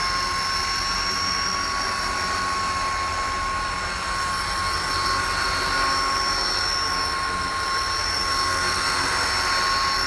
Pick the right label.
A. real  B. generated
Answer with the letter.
A